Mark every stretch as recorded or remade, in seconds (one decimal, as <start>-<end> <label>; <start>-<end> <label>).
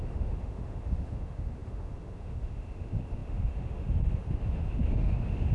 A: 0.0-5.5 remade